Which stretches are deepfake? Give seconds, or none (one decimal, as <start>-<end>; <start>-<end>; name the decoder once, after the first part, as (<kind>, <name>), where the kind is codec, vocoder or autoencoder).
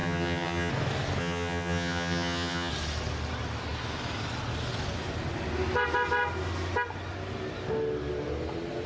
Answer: 0.0-0.7 (vocoder, HiFi-GAN); 1.2-2.7